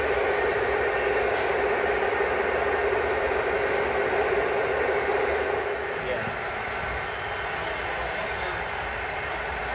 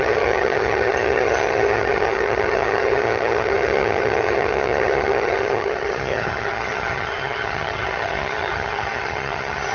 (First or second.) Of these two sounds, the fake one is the second